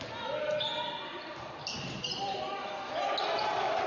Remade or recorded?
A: recorded